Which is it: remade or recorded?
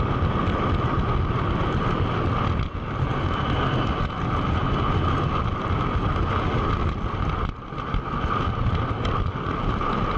recorded